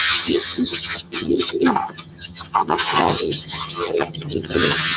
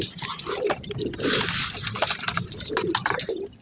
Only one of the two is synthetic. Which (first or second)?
first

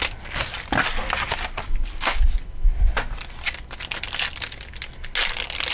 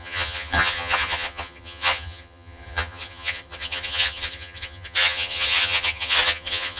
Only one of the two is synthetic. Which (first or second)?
second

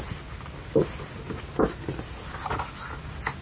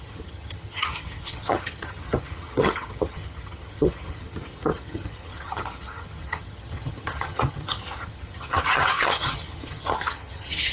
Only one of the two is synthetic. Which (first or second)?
second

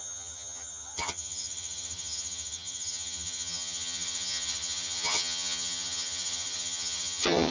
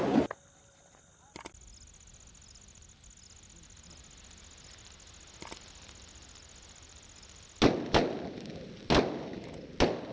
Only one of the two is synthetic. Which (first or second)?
first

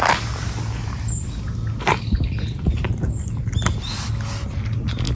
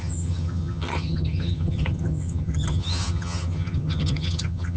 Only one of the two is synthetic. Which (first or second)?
second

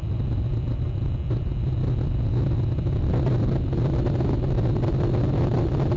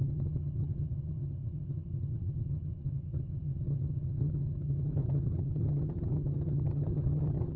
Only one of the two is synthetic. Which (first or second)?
second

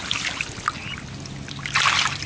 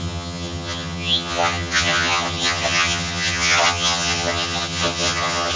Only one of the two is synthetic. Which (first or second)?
second